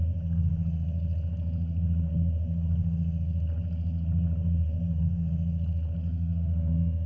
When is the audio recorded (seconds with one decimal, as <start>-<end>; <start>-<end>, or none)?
0.0-6.1